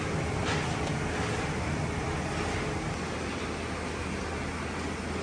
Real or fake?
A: real